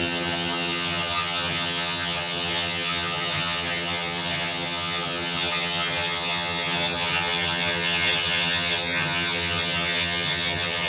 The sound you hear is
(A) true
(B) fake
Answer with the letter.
B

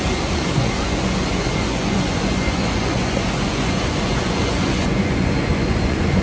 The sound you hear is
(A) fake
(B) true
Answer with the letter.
A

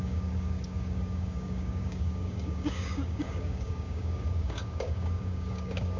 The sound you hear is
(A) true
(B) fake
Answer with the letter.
B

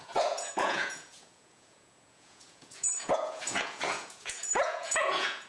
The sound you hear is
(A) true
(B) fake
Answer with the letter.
B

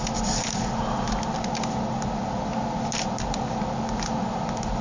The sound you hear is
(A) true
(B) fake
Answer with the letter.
A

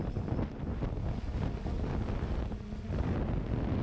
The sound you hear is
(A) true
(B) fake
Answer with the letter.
A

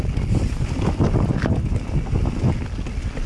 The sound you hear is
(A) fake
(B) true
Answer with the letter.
B